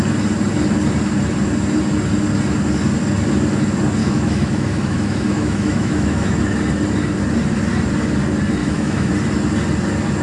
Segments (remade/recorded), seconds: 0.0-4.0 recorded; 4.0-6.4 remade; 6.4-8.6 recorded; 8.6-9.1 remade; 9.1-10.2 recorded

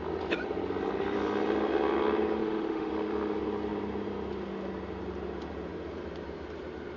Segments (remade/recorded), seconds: 0.0-2.4 recorded; 2.4-2.9 remade; 2.9-7.0 recorded